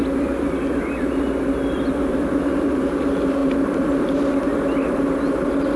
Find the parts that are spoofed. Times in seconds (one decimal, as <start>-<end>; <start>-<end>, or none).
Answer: 0.0-2.8; 3.4-4.3